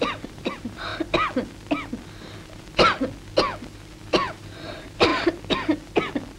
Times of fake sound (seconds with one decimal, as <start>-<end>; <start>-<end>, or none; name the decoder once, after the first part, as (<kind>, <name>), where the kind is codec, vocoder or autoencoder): 0.0-0.9 (vocoder, BigVGAN v2); 4.1-5.1